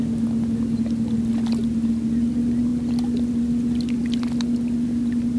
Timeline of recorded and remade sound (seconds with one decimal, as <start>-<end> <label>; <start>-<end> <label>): 0.0-2.7 recorded; 2.7-3.4 remade; 3.4-4.0 recorded; 4.0-5.4 remade